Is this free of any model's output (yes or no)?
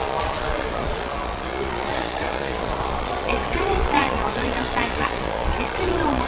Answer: no